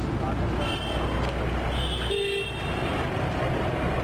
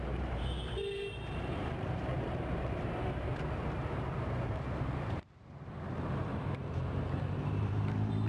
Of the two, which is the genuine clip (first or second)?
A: first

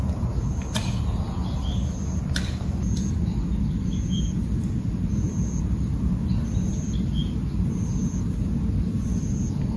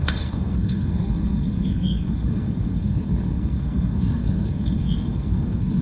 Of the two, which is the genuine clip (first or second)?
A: first